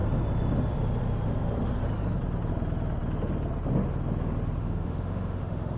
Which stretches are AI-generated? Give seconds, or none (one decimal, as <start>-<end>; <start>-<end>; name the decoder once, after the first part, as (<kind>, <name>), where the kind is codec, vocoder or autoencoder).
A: 4.6-5.8 (autoencoder, DAC-VAE)